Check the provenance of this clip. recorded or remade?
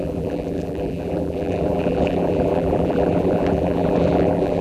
remade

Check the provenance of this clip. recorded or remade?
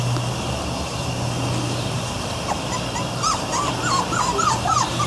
recorded